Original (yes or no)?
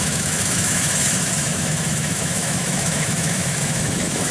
no